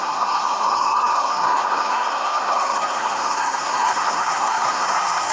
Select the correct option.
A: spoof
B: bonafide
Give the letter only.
A